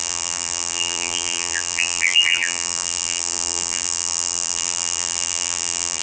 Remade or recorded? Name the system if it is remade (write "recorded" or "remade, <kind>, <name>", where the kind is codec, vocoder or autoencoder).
remade, vocoder, BigVGAN v2